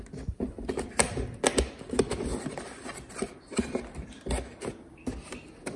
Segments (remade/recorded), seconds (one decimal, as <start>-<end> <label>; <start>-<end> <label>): 0.0-2.3 remade; 2.3-5.3 recorded; 5.3-5.8 remade